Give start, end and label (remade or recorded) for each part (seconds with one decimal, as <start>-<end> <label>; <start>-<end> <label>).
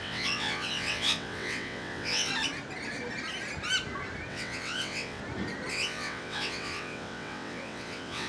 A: 0.0-2.3 remade; 2.3-4.3 recorded; 4.3-5.2 remade; 5.2-5.7 recorded; 5.7-8.3 remade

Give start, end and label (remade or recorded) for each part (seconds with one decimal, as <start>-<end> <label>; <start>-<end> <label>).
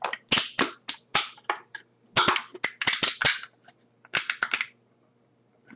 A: 0.0-5.8 recorded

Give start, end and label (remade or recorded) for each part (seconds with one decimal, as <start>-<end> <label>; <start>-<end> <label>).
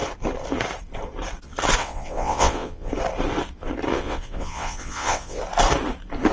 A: 0.0-1.8 recorded; 1.8-2.9 remade; 2.9-3.9 recorded; 3.9-5.4 remade; 5.4-6.3 recorded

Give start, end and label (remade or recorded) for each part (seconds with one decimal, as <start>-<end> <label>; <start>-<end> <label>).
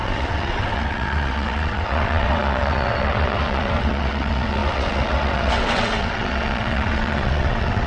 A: 0.0-7.9 remade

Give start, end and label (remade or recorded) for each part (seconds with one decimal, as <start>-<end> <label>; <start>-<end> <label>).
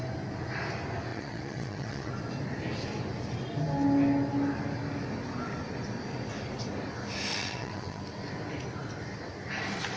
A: 0.0-1.1 recorded; 1.1-2.1 remade; 2.1-7.3 recorded; 7.3-8.0 remade; 8.0-10.0 recorded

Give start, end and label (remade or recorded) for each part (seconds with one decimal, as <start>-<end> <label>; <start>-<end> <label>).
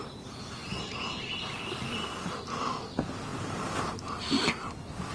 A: 0.0-5.1 recorded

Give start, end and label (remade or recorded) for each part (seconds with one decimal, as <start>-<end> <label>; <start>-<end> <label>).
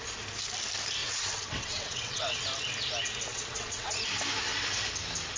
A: 0.0-1.0 recorded; 1.0-2.4 remade; 2.4-3.3 recorded; 3.3-3.9 remade; 3.9-5.4 recorded